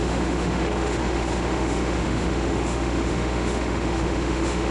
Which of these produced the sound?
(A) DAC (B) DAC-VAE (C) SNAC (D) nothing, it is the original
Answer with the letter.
B